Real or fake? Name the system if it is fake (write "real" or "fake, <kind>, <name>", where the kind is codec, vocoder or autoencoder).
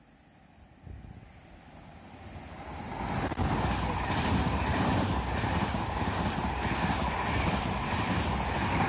real